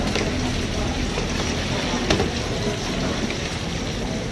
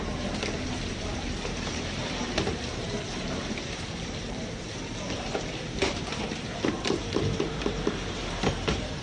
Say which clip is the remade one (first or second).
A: second